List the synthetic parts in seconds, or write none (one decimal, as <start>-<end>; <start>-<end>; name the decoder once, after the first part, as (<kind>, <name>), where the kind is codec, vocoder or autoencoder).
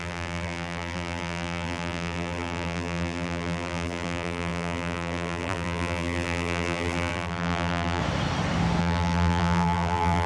0.0-8.0 (vocoder, BigVGAN v2); 8.8-10.3